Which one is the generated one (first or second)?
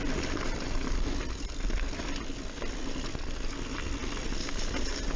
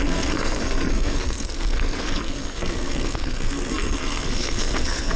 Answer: second